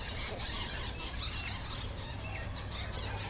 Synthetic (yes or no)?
no